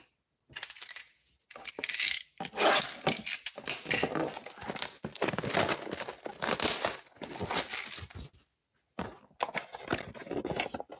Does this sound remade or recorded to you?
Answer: recorded